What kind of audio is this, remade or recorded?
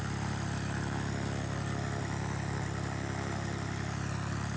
recorded